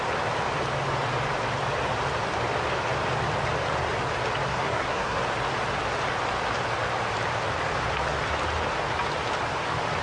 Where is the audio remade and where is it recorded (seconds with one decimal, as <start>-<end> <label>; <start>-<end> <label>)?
0.0-4.5 recorded; 4.5-5.2 remade; 5.2-10.0 recorded